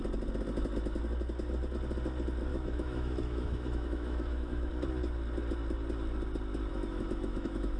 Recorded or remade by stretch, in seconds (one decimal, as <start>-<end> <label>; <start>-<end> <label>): 0.0-2.5 recorded; 2.5-4.7 remade; 4.7-6.7 recorded; 6.7-7.8 remade